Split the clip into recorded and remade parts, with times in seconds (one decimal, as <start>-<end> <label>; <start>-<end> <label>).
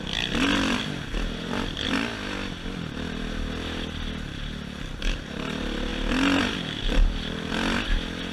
0.0-8.3 recorded